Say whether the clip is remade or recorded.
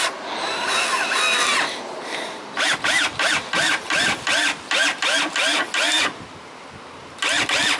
recorded